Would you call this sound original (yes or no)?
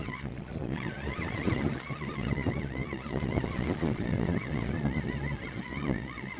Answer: no